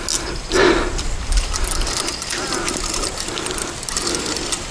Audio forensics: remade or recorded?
recorded